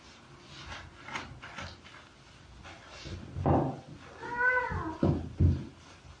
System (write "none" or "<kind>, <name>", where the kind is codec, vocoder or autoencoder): none